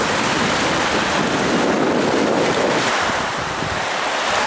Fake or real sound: real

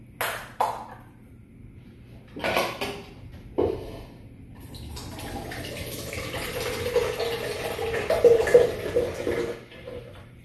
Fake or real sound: real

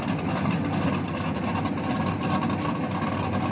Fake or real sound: real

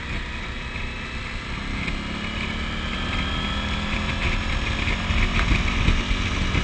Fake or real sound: real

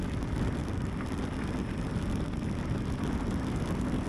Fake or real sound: real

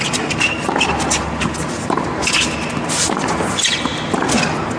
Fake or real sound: real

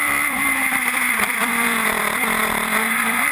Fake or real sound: fake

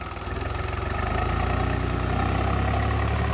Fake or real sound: real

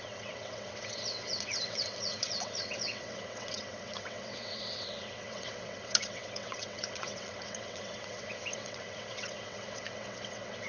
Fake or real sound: fake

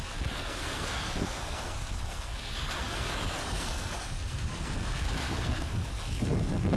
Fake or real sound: fake